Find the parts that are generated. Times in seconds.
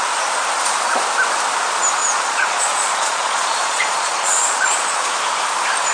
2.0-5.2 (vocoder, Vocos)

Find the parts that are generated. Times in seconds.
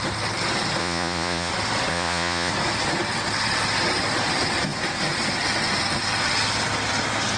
0.8-1.5 (vocoder, Vocos); 1.9-2.5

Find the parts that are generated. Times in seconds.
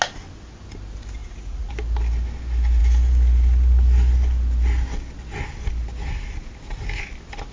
1.2-1.7 (vocoder, Vocos)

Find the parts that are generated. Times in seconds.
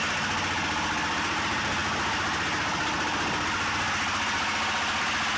none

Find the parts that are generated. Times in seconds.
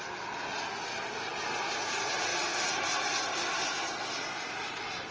none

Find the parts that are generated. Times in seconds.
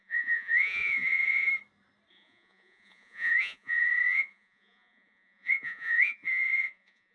0.0-1.5 (vocoder, Vocos); 2.1-7.1